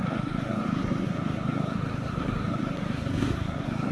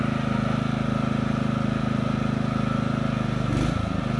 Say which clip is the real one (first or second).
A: second